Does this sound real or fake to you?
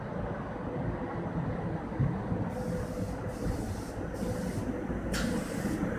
real